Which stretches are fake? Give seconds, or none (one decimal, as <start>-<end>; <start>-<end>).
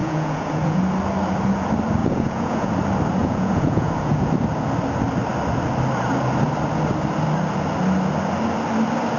0.0-0.8; 2.0-2.7; 3.2-4.3